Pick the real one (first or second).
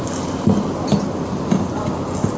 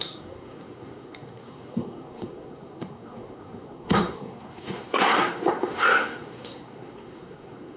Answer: first